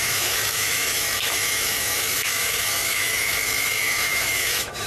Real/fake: fake